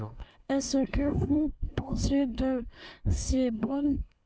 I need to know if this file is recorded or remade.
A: remade